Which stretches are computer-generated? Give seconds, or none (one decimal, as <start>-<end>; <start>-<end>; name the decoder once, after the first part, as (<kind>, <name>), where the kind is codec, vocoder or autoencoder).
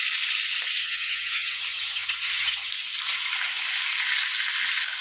0.8-2.7 (vocoder, HiFi-GAN)